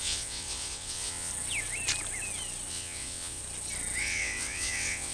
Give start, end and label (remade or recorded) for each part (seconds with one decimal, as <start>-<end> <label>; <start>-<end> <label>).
0.0-1.3 remade; 1.3-2.7 recorded; 2.7-3.4 remade; 3.4-4.0 recorded; 4.0-5.1 remade